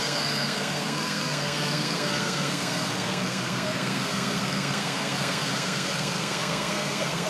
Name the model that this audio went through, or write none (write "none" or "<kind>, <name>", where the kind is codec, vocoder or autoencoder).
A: codec, SNAC